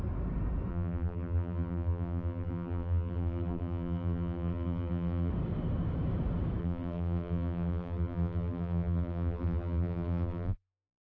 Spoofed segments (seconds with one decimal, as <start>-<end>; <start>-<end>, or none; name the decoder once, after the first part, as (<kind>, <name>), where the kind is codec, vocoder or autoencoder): 0.7-5.3 (vocoder, BigVGAN v2); 6.6-11.1